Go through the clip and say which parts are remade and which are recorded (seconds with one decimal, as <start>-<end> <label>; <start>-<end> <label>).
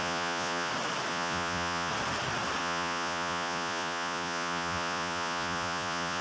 0.0-0.7 remade; 0.7-1.1 recorded; 1.1-1.9 remade; 1.9-2.6 recorded; 2.6-6.2 remade